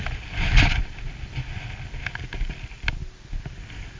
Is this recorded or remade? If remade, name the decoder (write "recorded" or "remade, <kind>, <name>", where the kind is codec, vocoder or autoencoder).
recorded